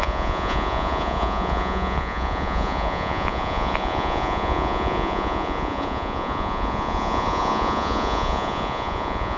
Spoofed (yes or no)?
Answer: yes